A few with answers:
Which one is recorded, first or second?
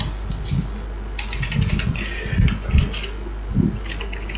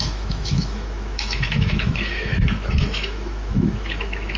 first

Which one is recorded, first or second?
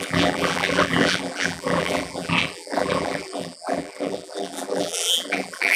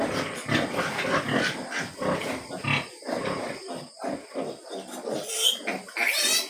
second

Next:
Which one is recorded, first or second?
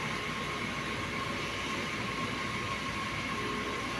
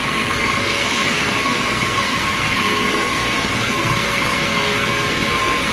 first